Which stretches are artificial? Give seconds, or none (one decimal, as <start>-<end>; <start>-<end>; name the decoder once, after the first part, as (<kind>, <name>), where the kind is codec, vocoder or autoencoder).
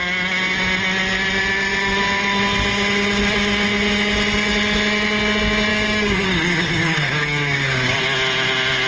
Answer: 5.7-8.0 (codec, DAC)